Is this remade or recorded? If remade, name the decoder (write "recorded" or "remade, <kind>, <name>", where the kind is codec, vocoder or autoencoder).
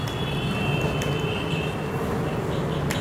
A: recorded